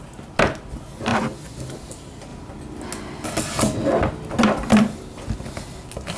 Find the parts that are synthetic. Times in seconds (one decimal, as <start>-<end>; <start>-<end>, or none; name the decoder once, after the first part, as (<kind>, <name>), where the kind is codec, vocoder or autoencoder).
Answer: none